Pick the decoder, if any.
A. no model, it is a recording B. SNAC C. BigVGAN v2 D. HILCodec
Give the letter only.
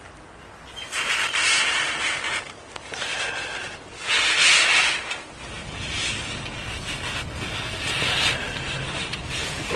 A